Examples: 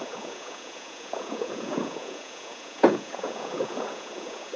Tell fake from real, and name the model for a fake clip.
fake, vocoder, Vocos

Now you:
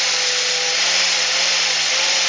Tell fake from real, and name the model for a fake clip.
real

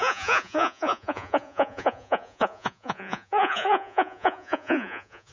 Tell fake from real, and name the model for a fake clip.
fake, vocoder, Vocos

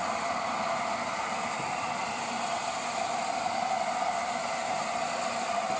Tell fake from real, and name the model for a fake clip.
real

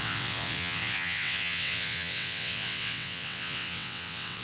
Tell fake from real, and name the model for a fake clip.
fake, vocoder, WaveNeXt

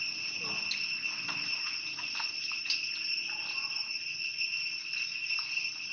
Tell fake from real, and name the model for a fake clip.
real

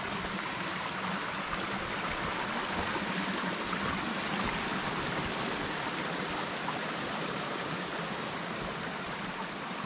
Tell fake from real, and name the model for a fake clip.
real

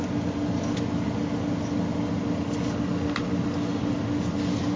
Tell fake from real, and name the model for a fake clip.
real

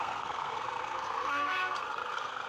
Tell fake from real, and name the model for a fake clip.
fake, codec, SNAC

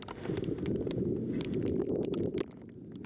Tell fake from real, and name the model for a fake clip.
real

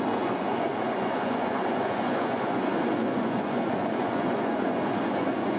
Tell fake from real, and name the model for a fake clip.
fake, vocoder, Vocos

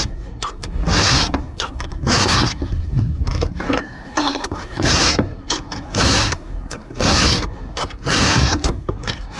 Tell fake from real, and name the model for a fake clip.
fake, codec, SNAC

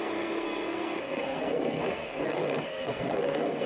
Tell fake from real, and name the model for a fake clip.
fake, codec, SNAC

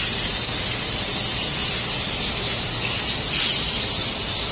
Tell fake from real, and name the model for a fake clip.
real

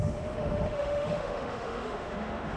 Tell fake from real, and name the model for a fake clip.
fake, autoencoder, DAC-VAE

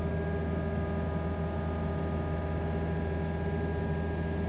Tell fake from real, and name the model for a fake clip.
real